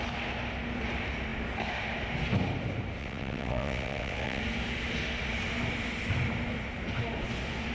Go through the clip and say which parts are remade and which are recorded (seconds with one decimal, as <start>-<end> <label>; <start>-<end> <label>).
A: 0.0-3.0 recorded; 3.0-4.4 remade; 4.4-7.7 recorded